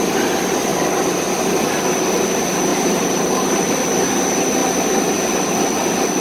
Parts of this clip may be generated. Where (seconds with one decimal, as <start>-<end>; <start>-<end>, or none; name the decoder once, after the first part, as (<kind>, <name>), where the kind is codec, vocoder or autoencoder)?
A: 2.7-3.5 (vocoder, BigVGAN v2)

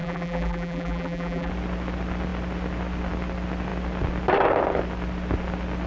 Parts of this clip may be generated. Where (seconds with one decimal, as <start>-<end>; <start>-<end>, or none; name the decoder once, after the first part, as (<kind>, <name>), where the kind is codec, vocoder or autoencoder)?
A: 0.0-1.5 (vocoder, BigVGAN v2)

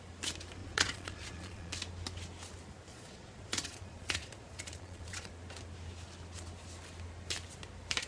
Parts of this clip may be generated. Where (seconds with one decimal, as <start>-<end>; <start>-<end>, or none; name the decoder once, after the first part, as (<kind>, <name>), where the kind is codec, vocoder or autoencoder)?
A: 0.6-1.7 (vocoder, Vocos); 2.9-5.3